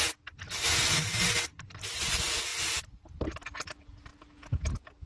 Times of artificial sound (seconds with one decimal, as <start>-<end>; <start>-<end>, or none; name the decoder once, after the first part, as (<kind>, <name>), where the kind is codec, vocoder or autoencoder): 1.5-2.1 (vocoder, BigVGAN v2); 2.5-3.2